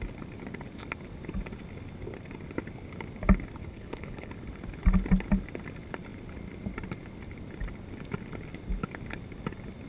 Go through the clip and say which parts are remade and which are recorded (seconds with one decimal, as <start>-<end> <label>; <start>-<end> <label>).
0.0-3.6 recorded; 3.6-4.3 remade; 4.3-9.9 recorded